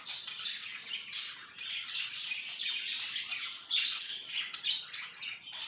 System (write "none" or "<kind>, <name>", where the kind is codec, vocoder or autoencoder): none